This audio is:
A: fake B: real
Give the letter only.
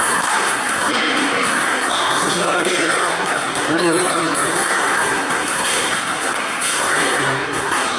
A